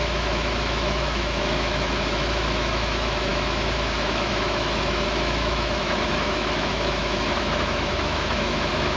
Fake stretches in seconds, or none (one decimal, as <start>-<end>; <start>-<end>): 0.0-9.0